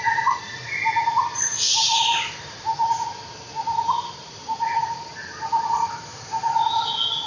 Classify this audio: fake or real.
real